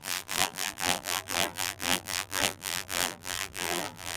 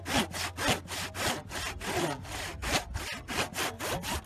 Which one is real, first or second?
second